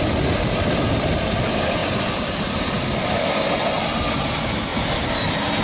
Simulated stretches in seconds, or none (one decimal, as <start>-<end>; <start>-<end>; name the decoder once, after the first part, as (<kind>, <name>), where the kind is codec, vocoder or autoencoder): none